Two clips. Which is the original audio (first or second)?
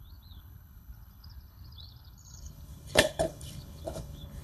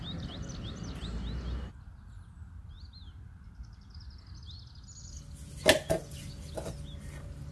second